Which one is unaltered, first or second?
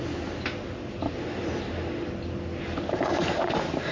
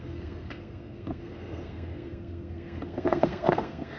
first